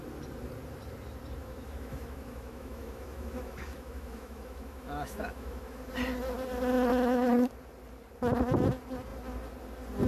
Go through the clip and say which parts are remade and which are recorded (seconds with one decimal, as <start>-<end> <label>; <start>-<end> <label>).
0.0-1.4 recorded; 1.4-5.9 remade; 5.9-6.9 recorded; 6.9-7.5 remade; 7.5-10.1 recorded